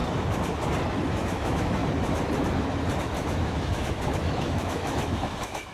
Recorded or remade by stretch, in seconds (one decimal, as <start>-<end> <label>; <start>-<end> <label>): 0.0-1.0 recorded; 1.0-1.8 remade; 1.8-3.0 recorded; 3.0-5.7 remade